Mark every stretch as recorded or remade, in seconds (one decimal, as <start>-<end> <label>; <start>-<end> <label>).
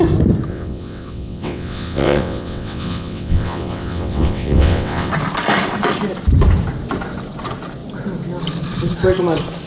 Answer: 0.0-0.5 recorded; 0.5-5.1 remade; 5.1-9.7 recorded